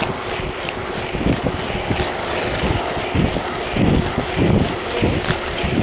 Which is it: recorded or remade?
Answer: recorded